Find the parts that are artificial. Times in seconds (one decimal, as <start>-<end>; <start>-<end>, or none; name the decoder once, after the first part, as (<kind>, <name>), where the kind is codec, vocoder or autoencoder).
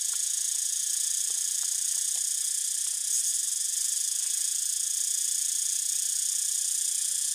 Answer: none